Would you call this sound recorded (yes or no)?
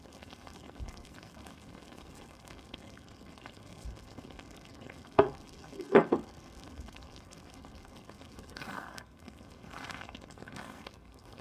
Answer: no